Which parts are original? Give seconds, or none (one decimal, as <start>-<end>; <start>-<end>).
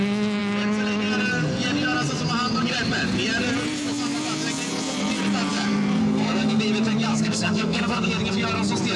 0.0-6.0; 6.6-7.1; 8.1-9.0